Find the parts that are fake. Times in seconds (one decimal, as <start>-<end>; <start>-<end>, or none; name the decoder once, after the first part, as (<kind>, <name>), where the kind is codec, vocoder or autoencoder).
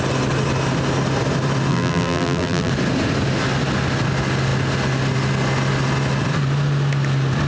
1.7-2.7 (vocoder, BigVGAN v2)